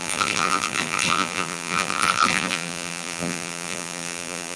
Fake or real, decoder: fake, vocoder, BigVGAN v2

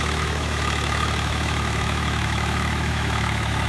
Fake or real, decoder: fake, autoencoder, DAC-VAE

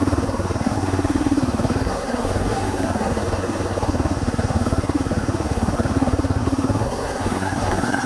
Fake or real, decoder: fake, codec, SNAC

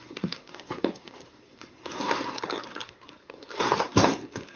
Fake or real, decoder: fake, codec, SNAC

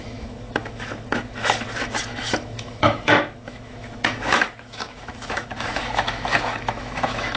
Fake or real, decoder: fake, autoencoder, DAC-VAE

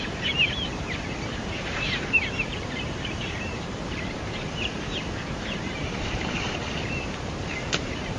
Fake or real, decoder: fake, vocoder, BigVGAN v2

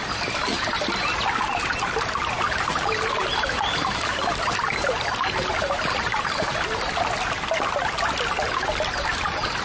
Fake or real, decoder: real